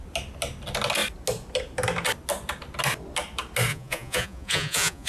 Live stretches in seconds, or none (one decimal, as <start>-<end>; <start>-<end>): 0.0-3.7